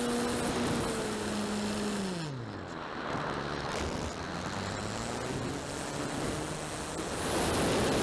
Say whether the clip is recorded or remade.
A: recorded